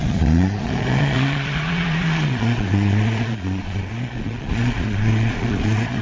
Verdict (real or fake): fake